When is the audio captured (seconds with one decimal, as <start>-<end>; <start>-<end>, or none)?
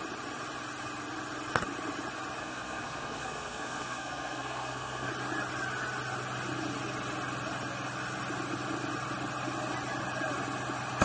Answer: 0.0-2.4; 5.1-11.0